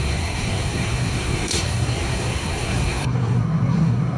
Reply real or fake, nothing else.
fake